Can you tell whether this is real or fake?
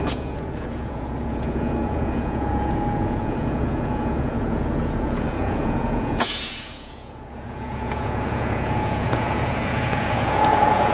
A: fake